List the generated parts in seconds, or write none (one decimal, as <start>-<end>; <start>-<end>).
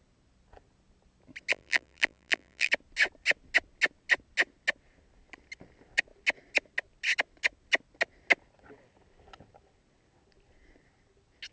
1.5-2.7